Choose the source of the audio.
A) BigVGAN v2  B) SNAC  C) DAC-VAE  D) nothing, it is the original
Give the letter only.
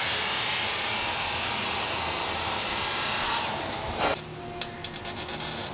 D